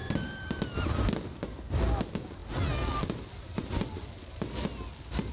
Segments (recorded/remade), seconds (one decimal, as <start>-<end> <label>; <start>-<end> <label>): 0.0-5.3 recorded